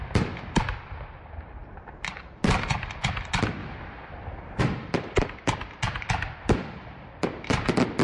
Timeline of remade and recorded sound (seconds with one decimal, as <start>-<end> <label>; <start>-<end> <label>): 0.0-3.6 remade; 3.6-4.6 recorded; 4.6-8.0 remade